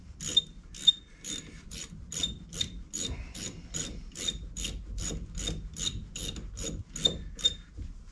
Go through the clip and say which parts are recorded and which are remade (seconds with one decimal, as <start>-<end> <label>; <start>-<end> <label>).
0.0-8.1 recorded